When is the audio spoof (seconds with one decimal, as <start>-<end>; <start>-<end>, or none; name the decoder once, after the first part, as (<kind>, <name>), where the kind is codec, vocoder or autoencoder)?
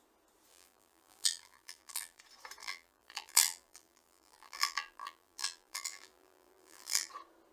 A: 0.5-2.2 (vocoder, BigVGAN v2); 2.6-7.1